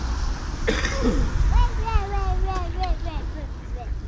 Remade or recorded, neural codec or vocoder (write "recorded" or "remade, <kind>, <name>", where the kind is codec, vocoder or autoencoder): recorded